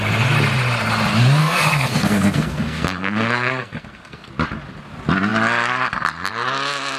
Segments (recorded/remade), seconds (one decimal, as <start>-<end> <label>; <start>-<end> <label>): 0.0-1.4 recorded; 1.4-4.3 remade; 4.3-7.0 recorded

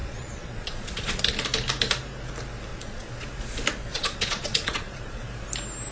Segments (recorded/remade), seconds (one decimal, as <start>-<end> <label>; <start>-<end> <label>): 0.0-1.2 remade; 1.2-2.7 recorded; 2.7-3.4 remade; 3.4-3.9 recorded; 3.9-5.3 remade; 5.3-5.9 recorded

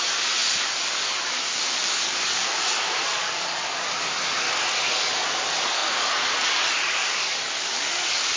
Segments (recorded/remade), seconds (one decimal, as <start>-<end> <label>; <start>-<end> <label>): 0.0-8.4 remade